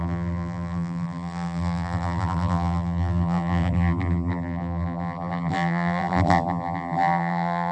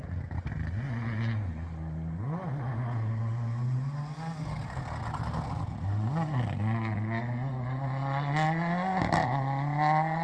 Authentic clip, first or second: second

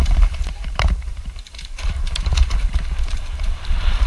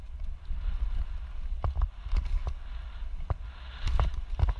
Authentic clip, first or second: second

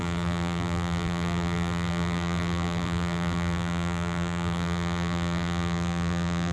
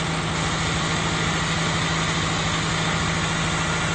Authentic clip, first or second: second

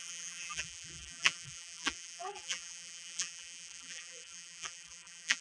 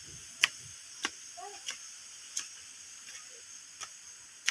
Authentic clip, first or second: second